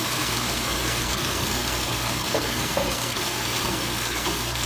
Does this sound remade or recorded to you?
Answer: remade